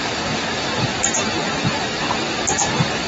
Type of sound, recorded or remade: recorded